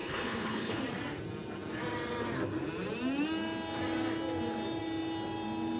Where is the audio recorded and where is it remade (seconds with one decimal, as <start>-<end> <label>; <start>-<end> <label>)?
0.0-0.8 remade; 0.8-5.8 recorded